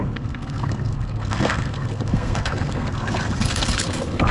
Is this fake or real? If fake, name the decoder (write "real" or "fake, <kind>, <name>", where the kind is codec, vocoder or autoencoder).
fake, codec, SNAC